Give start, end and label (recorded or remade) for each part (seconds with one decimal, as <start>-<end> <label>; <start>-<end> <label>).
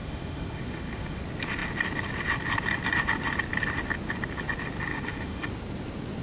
0.0-1.2 remade; 1.2-4.9 recorded; 4.9-5.5 remade; 5.5-6.2 recorded